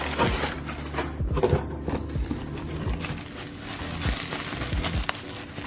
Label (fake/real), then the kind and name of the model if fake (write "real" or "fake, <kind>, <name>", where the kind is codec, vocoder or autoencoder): real